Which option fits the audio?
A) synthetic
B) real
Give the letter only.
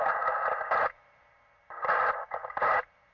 A